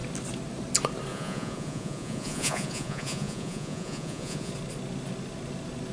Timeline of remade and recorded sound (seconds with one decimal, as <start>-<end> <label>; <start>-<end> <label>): 0.0-1.1 recorded; 1.1-4.5 remade; 4.5-5.9 recorded